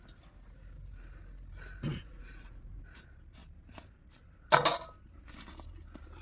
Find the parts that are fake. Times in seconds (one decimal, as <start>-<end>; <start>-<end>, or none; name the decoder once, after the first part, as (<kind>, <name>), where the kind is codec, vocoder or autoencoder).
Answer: 1.9-2.8 (vocoder, Vocos)